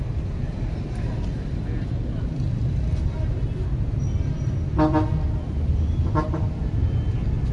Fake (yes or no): no